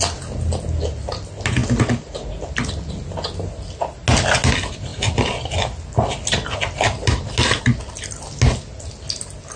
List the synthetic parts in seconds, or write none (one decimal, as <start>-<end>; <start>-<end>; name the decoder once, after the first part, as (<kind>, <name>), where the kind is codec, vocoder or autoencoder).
none